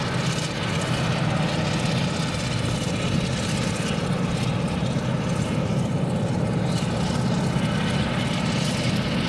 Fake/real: real